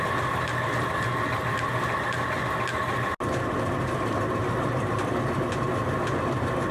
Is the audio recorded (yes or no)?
yes